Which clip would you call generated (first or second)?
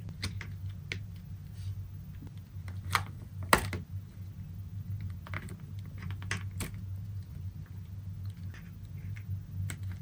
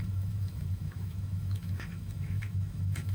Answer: second